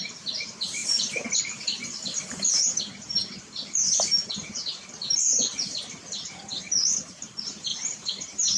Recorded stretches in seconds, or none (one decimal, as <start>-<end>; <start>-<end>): 0.0-7.7